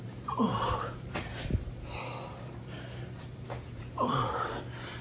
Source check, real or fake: fake